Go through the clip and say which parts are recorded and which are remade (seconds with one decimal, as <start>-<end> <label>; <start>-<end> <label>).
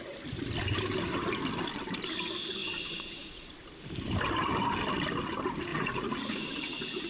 0.0-2.6 recorded; 2.6-3.5 remade; 3.5-5.7 recorded; 5.7-7.1 remade